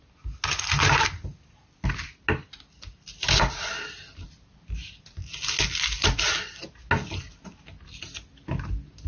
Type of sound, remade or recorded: recorded